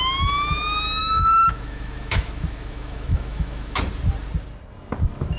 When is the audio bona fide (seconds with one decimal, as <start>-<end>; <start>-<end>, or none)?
0.0-1.0; 3.8-5.4